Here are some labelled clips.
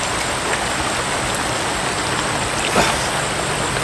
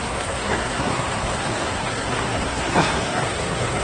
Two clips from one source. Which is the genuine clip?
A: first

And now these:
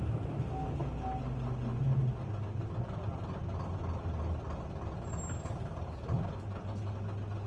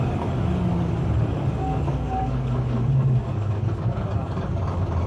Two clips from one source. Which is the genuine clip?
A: first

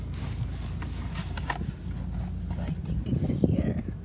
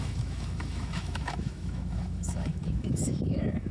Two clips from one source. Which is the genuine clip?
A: first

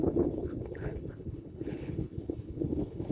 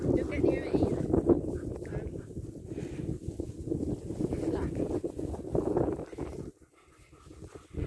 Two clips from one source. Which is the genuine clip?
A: second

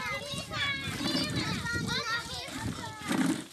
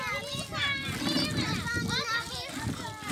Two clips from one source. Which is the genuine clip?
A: second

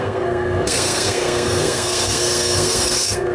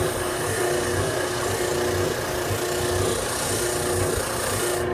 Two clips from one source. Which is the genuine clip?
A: second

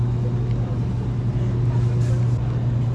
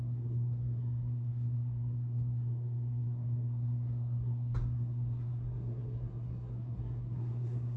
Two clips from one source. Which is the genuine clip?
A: first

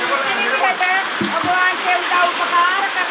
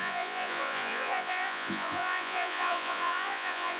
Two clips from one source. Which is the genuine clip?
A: first